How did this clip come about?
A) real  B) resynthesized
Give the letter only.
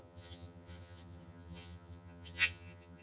B